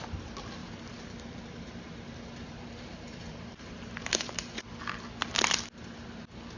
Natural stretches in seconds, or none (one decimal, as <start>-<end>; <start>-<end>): 0.0-0.6; 4.6-6.6